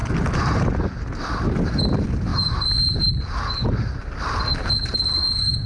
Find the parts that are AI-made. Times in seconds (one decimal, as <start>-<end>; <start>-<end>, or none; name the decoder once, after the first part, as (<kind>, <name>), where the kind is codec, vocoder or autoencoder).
none